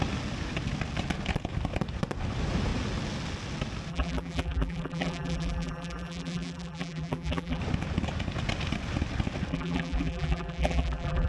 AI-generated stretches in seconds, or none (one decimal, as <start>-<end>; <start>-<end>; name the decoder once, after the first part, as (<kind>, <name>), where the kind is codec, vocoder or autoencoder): 3.9-7.6 (vocoder, BigVGAN v2); 9.5-11.3